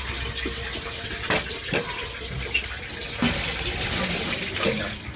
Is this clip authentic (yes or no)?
yes